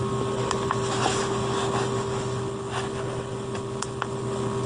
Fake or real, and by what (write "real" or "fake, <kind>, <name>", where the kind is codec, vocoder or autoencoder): real